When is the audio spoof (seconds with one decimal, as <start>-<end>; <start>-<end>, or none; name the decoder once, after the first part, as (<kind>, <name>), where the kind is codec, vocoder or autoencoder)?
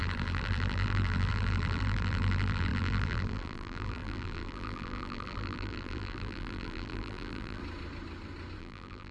0.0-7.6 (vocoder, BigVGAN v2); 8.6-9.1